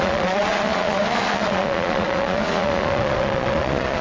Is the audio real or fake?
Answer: fake